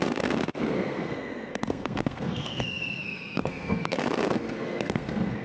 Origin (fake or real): fake